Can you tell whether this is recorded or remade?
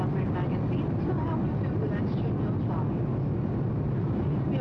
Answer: recorded